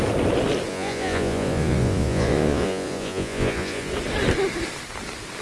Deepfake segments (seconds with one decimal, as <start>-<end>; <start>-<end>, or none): 0.7-3.9